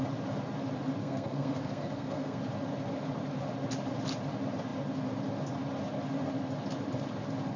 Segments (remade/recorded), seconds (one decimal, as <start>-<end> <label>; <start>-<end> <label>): 0.0-1.0 recorded; 1.0-2.4 remade; 2.4-7.6 recorded